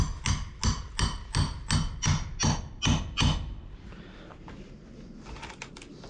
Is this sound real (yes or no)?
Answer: yes